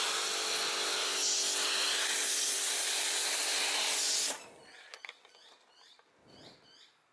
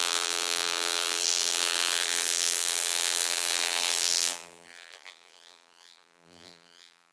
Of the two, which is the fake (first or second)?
second